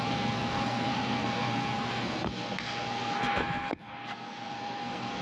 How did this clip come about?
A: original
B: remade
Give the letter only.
B